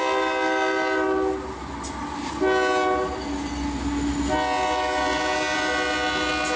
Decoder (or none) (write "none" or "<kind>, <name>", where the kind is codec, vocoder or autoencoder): none